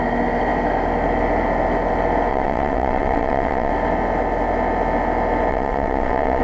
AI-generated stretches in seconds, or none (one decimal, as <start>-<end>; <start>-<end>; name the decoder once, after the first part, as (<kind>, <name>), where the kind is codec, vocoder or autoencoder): 2.3-3.7 (vocoder, WaveNeXt); 5.5-6.4